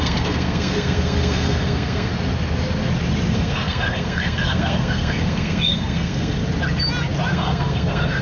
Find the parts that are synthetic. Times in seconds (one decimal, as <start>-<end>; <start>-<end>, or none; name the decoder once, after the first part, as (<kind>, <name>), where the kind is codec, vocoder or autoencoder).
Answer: 0.0-2.1 (codec, SNAC); 3.3-6.4; 7.3-8.2